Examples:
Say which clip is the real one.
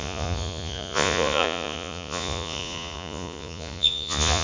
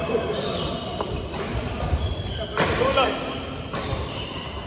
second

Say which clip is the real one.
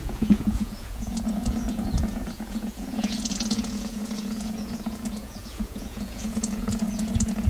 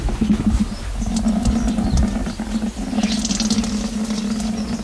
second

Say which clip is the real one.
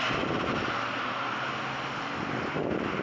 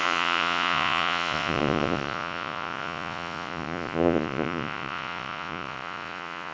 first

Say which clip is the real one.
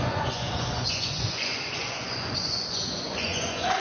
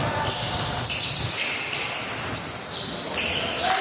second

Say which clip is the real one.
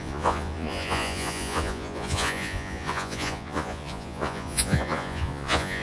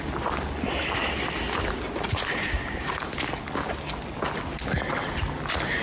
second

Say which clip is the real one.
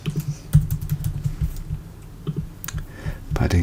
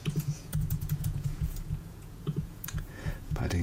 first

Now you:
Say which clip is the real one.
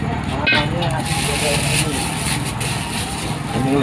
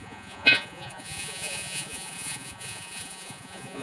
first